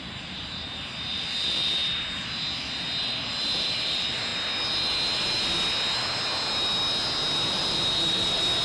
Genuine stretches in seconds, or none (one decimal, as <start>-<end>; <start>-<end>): 1.8-3.8; 4.3-7.4